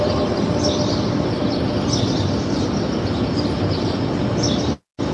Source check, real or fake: real